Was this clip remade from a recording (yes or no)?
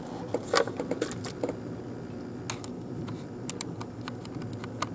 no